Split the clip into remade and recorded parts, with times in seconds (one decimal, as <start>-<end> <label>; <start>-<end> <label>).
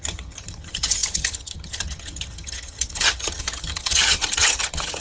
0.0-5.0 remade